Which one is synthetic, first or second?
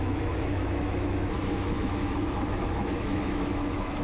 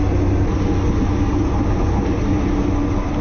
first